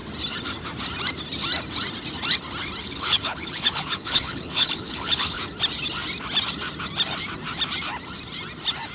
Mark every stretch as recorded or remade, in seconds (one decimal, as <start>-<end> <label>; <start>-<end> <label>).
0.0-2.8 recorded; 2.8-5.4 remade; 5.4-8.9 recorded